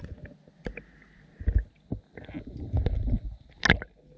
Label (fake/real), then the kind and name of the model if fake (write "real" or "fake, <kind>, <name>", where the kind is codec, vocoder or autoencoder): real